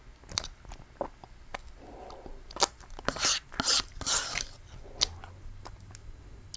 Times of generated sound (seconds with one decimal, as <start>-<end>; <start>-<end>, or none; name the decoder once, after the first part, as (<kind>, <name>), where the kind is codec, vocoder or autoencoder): none